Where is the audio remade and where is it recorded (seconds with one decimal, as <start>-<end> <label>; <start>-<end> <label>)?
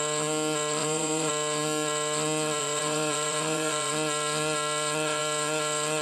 0.0-0.8 recorded; 0.8-1.3 remade; 1.3-2.6 recorded; 2.6-3.9 remade; 3.9-6.0 recorded